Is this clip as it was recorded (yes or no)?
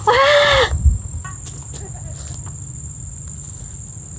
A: yes